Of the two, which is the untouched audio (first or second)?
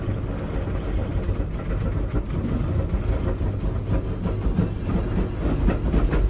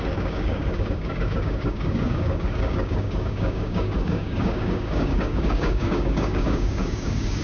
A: first